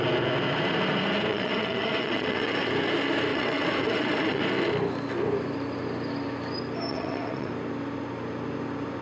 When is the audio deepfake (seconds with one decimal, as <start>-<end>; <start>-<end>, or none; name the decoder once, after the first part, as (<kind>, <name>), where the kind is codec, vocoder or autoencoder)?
1.3-2.7 (vocoder, WaveNeXt); 3.3-4.4; 6.9-7.5